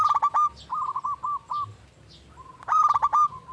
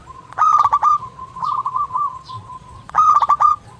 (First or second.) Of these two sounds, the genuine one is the first